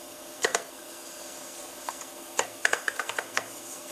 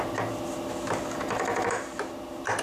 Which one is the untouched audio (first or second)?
second